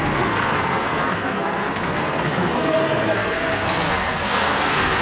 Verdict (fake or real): fake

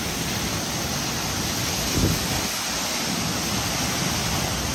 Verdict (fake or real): real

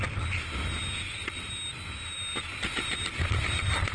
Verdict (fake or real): real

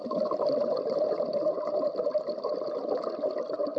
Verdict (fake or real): real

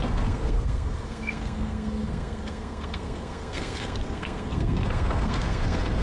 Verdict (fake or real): fake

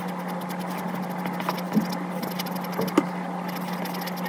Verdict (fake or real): real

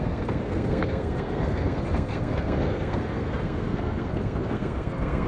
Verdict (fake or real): fake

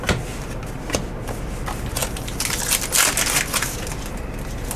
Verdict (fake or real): real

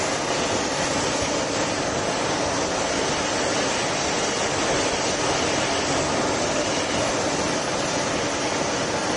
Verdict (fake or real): real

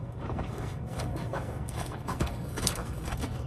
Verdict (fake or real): fake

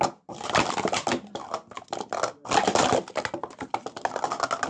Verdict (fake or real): real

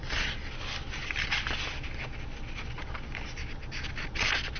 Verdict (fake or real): real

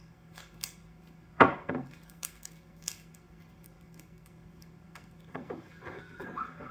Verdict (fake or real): fake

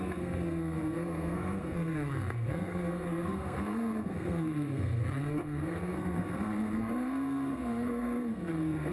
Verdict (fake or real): fake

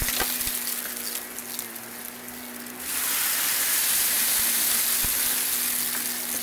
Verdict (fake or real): real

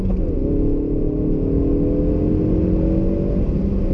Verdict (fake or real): real